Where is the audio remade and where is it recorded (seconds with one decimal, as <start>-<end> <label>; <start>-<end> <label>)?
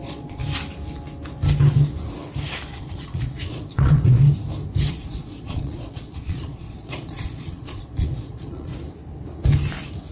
0.0-0.4 remade; 0.4-2.8 recorded; 2.8-4.2 remade; 4.2-4.9 recorded; 4.9-8.7 remade; 8.7-10.1 recorded